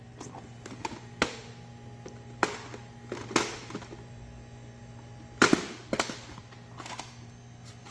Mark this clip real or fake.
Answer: real